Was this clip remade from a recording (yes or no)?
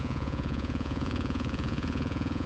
yes